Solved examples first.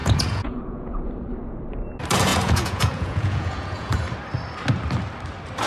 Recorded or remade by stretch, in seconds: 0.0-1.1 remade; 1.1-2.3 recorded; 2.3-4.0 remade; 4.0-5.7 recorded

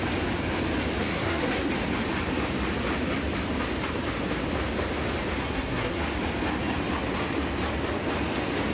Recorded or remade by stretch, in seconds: 0.0-1.1 recorded; 1.1-1.7 remade; 1.7-5.4 recorded; 5.4-6.0 remade; 6.0-8.7 recorded

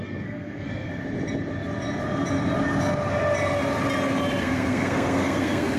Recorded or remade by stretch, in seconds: 0.0-0.9 remade; 0.9-4.4 recorded; 4.4-5.8 remade

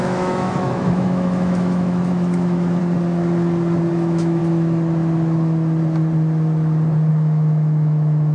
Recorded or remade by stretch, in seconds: 0.0-2.8 remade; 2.8-3.9 recorded; 3.9-4.4 remade; 4.4-7.1 recorded; 7.1-8.3 remade